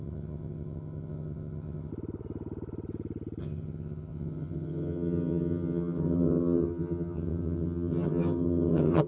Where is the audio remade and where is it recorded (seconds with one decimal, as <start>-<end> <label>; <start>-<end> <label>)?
0.0-1.9 remade; 1.9-3.4 recorded; 3.4-9.1 remade